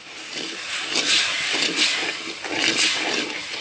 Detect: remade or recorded recorded